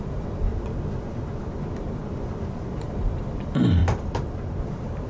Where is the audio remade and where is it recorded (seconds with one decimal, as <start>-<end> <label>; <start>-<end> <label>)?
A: 0.0-0.5 remade; 0.5-1.6 recorded; 1.6-2.0 remade; 2.0-2.7 recorded; 2.7-3.8 remade; 3.8-4.6 recorded; 4.6-5.1 remade